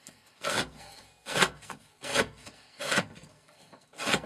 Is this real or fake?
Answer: fake